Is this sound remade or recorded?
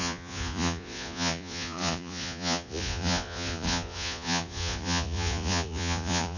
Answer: remade